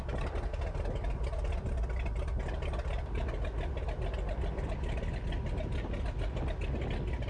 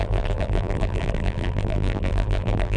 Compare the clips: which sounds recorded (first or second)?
first